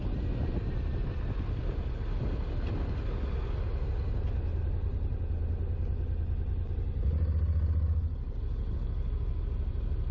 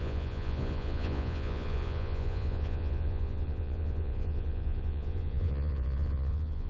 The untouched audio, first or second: first